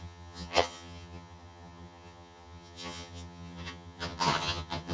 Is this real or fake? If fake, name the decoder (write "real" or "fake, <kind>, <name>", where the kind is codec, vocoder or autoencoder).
fake, vocoder, HiFi-GAN